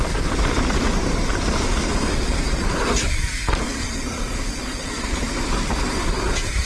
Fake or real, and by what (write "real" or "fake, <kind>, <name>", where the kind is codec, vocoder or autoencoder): real